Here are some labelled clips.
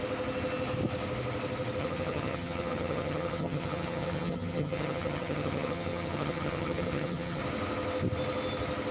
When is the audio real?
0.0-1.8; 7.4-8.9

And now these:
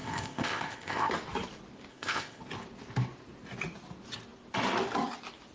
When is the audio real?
1.1-1.9; 2.4-5.5

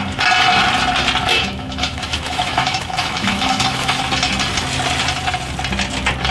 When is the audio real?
0.0-1.3; 4.0-6.3

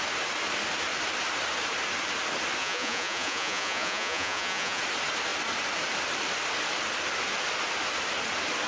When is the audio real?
0.0-2.6; 4.8-8.7

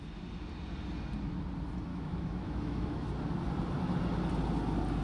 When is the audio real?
0.0-1.9; 3.1-5.0

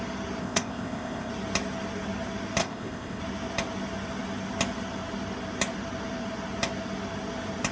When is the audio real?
0.0-0.4; 1.3-2.6; 3.2-7.7